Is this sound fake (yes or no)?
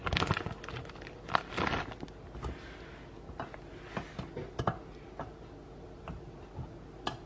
no